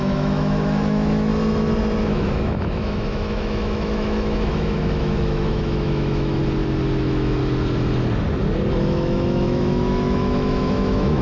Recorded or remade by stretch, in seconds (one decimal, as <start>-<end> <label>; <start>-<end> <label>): 0.0-1.3 remade; 1.3-2.1 recorded; 2.1-6.4 remade; 6.4-7.0 recorded; 7.0-7.4 remade; 7.4-8.8 recorded; 8.8-11.2 remade